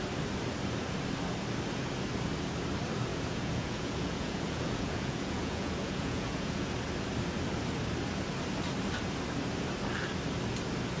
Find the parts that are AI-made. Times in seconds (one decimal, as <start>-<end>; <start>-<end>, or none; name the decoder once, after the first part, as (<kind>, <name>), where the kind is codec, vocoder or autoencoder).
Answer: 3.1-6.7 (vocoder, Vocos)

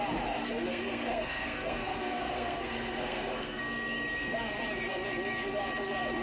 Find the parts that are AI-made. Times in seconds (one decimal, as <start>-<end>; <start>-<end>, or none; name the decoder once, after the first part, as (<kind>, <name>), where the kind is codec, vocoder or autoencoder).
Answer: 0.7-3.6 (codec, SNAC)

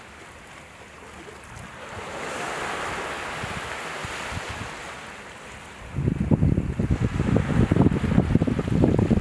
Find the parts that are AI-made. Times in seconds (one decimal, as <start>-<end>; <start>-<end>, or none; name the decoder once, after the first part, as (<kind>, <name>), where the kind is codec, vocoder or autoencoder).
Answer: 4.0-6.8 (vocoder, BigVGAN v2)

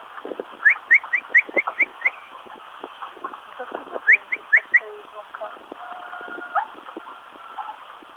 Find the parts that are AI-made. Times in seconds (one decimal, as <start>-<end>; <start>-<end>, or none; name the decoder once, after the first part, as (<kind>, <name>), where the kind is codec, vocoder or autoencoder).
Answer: 1.9-5.2 (autoencoder, DAC-VAE)

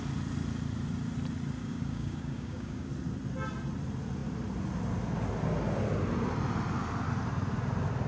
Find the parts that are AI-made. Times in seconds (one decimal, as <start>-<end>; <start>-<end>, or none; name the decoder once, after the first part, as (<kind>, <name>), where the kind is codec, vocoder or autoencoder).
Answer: 1.6-2.9 (codec, DAC)

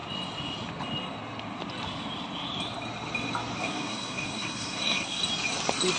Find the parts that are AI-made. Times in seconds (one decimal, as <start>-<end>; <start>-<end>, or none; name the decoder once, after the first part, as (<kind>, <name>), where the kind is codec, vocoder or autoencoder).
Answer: 3.6-5.2 (codec, SNAC)